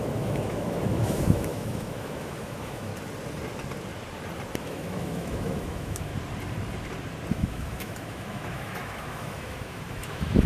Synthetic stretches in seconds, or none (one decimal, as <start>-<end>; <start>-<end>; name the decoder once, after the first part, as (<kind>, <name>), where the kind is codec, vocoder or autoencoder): 0.0-2.9 (autoencoder, DAC-VAE); 4.6-6.1; 7.3-10.5